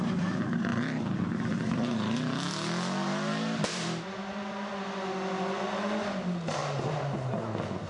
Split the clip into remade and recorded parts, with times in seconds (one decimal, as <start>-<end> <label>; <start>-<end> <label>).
0.0-0.7 recorded; 0.7-4.7 remade; 4.7-7.9 recorded